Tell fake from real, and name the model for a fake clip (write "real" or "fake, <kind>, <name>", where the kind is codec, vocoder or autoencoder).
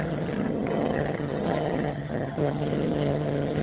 fake, vocoder, HiFi-GAN